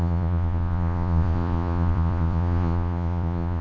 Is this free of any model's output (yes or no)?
no